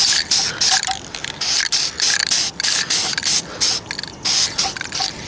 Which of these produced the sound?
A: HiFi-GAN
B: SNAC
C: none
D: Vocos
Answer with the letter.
C